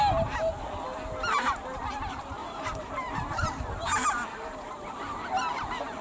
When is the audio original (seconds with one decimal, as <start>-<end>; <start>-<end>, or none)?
0.0-2.4; 5.2-6.0